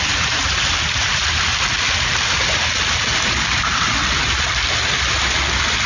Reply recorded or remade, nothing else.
recorded